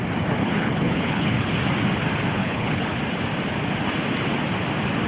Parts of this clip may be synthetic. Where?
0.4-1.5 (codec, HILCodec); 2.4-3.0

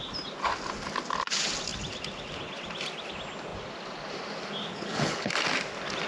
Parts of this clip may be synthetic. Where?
4.7-5.3 (codec, HILCodec)

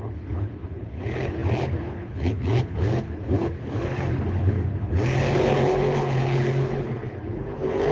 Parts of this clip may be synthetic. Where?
0.0-7.9 (codec, HILCodec)

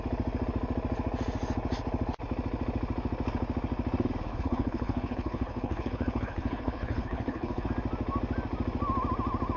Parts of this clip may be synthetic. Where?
4.3-7.7 (codec, HILCodec)

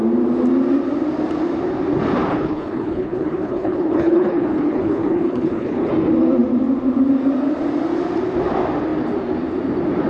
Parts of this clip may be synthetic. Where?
2.3-5.9 (codec, HILCodec)

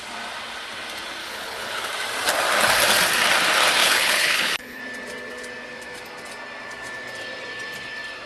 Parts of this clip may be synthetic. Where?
1.2-1.9 (codec, HILCodec); 3.8-4.8

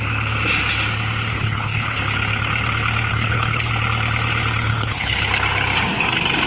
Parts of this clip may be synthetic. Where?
1.3-2.0 (codec, HILCodec); 3.1-3.7; 4.7-5.3

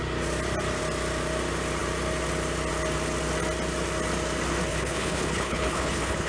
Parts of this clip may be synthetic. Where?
4.7-6.3 (codec, HILCodec)